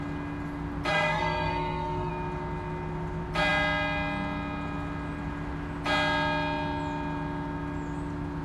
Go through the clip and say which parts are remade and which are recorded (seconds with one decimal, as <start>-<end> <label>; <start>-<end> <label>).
0.0-0.9 recorded; 0.9-2.1 remade; 2.1-8.4 recorded